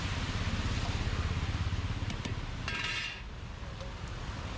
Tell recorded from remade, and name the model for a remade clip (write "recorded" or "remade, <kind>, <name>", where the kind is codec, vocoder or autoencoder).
recorded